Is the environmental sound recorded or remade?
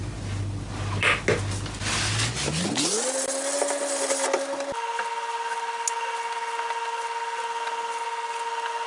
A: recorded